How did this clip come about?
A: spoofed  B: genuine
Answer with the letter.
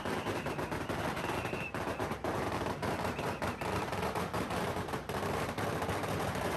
A